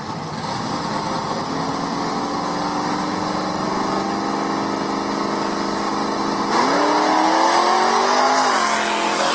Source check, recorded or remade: recorded